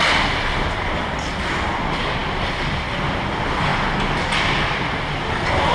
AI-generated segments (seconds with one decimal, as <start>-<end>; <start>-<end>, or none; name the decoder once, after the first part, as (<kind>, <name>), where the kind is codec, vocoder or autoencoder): 0.0-3.7 (vocoder, BigVGAN v2); 4.4-5.7